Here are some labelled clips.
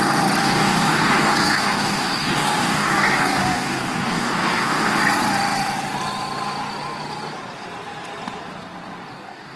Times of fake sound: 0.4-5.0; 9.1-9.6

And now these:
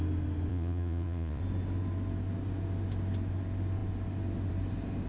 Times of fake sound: 0.5-1.4

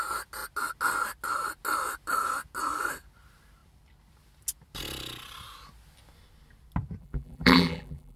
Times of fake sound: 7.0-8.2

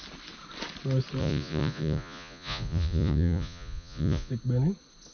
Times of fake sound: 1.2-4.3

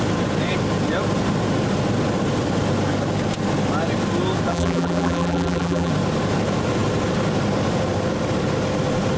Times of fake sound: 4.5-5.9

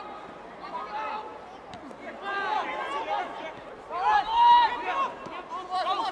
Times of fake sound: none

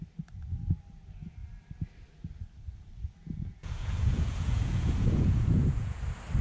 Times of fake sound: 3.2-6.0

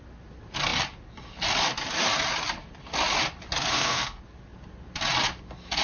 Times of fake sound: 3.7-4.2